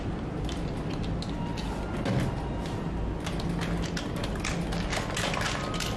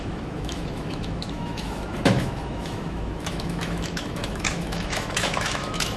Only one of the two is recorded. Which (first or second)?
first